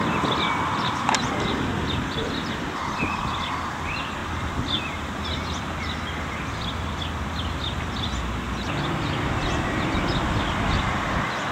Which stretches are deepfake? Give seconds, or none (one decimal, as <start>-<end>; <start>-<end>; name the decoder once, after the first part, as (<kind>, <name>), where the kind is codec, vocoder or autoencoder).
none